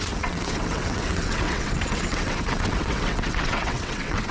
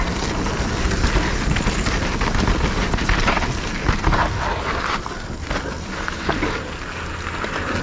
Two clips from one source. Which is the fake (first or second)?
first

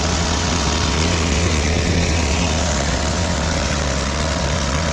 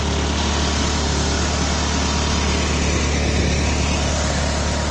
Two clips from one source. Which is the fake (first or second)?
first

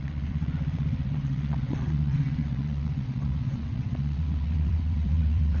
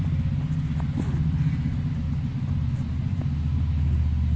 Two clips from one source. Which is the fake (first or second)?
first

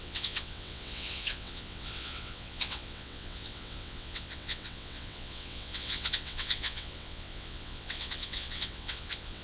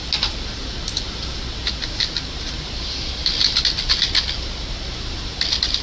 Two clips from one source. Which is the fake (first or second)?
first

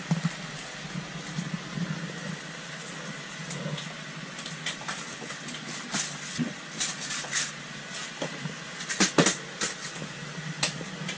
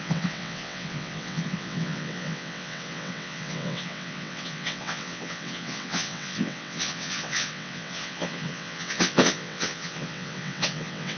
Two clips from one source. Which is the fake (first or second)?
second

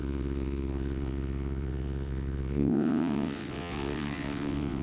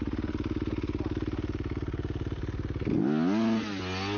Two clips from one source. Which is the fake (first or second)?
first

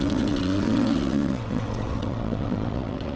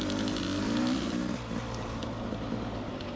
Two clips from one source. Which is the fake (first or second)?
first